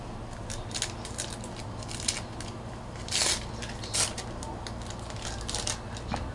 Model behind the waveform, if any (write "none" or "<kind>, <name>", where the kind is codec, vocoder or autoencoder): none